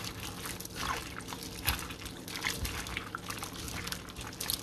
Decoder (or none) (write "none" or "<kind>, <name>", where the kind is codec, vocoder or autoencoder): none